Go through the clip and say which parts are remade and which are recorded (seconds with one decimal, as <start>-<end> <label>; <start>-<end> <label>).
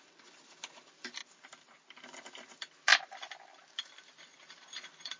0.0-1.2 remade; 1.2-2.0 recorded; 2.0-5.2 remade